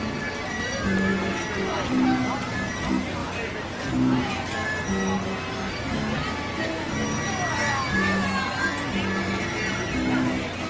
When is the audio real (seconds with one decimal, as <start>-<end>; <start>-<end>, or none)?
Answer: 0.0-10.7